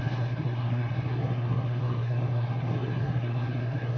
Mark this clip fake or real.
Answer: fake